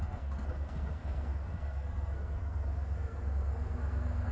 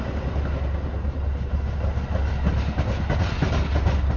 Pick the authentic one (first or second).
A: second